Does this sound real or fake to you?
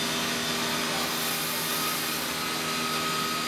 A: real